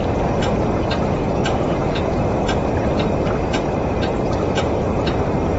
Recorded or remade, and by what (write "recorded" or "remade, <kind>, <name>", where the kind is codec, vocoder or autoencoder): remade, vocoder, BigVGAN v2